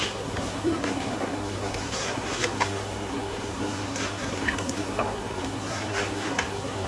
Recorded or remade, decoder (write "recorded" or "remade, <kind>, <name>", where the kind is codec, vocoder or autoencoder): remade, codec, SNAC